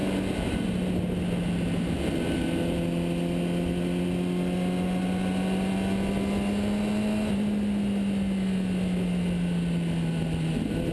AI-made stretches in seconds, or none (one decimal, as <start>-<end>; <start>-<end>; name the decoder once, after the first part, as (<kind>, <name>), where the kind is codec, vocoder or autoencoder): none